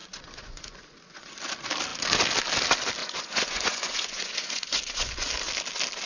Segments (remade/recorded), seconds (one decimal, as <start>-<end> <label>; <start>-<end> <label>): 0.0-1.4 remade; 1.4-3.0 recorded; 3.0-5.3 remade; 5.3-6.1 recorded